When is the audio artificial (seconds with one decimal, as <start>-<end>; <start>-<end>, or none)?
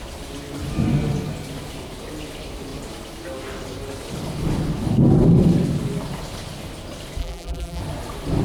7.2-7.8